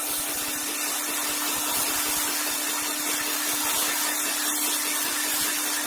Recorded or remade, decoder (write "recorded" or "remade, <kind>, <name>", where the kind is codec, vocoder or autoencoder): recorded